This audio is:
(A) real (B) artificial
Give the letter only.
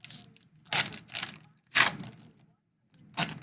A